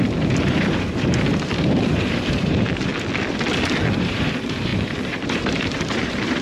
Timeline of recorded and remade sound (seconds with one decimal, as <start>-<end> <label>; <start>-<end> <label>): 0.0-2.9 remade; 2.9-3.9 recorded; 3.9-6.4 remade